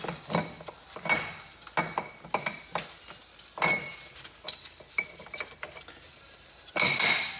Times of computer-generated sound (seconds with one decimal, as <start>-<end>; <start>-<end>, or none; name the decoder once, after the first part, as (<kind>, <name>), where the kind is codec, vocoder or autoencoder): none